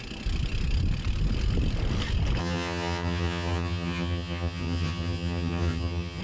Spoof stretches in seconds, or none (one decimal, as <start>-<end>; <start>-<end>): 2.4-6.2